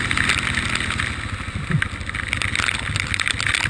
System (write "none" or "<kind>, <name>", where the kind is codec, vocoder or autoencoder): none